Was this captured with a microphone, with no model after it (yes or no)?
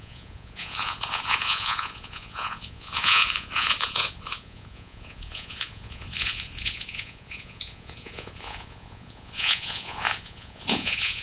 no